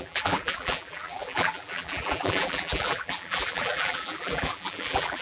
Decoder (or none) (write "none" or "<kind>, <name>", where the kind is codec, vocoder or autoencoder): vocoder, BigVGAN v2